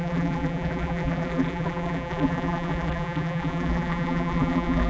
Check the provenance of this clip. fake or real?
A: fake